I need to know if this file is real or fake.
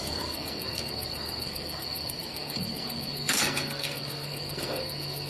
fake